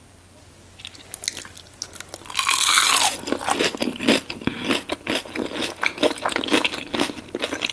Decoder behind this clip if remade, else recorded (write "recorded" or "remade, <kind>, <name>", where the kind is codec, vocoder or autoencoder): recorded